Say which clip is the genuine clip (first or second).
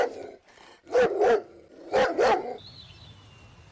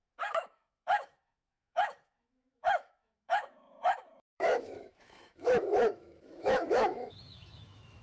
first